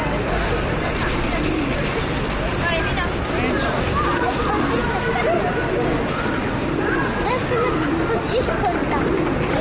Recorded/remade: recorded